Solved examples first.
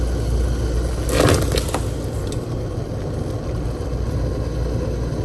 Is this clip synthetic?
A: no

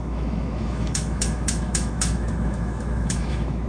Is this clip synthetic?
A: yes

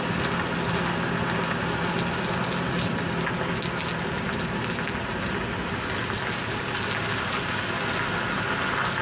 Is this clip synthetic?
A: no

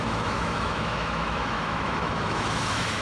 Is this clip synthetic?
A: yes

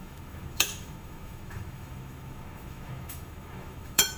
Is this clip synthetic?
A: yes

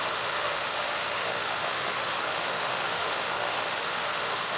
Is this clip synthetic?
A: yes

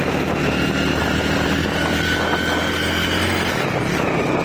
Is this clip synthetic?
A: no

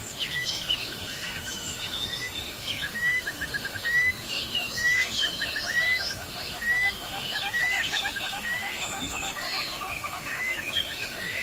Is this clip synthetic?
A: yes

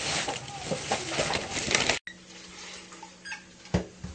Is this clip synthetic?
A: no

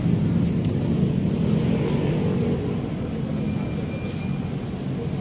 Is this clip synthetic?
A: no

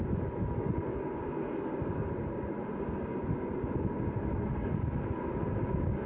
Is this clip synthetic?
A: no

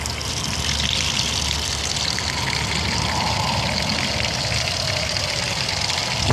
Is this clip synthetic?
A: no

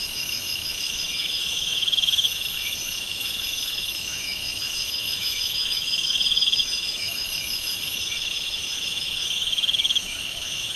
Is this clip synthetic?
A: yes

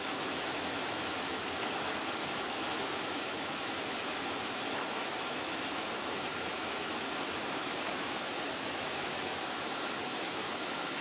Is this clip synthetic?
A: yes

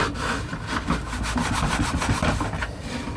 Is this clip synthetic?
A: no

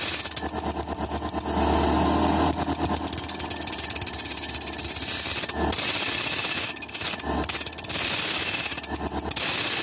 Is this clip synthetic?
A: no